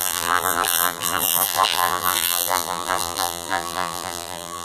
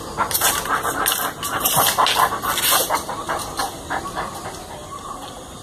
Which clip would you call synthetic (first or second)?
first